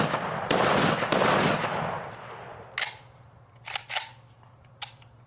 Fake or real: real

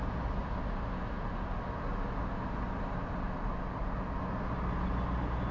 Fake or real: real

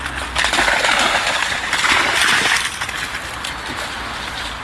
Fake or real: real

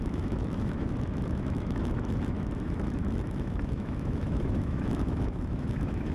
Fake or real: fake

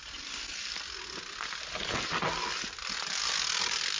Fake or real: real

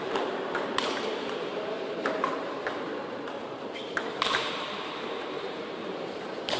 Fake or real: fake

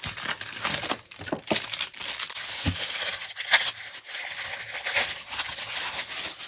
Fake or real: real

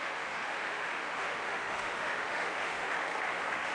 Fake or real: fake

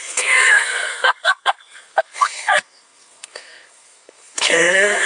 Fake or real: fake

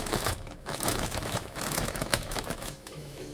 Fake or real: fake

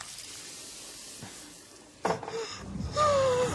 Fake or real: real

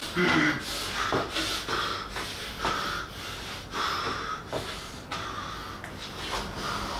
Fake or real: real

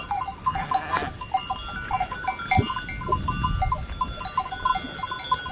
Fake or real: real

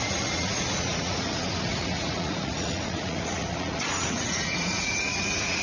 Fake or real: fake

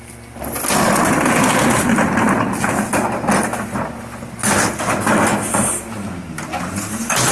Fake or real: real